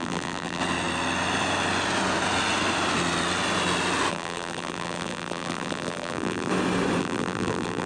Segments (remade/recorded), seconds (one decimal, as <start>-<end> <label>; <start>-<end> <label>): 0.0-0.6 remade; 0.6-4.1 recorded; 4.1-6.5 remade; 6.5-7.0 recorded; 7.0-7.9 remade